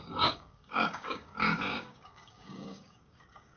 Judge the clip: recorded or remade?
remade